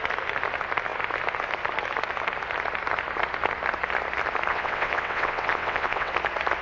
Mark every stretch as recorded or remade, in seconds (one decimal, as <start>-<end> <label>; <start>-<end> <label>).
0.0-4.5 recorded; 4.5-6.1 remade; 6.1-6.6 recorded